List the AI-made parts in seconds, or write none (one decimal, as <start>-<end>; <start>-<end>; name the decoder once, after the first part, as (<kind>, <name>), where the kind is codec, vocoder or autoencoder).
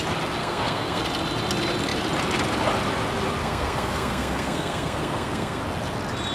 0.4-1.0 (codec, SNAC); 3.4-5.6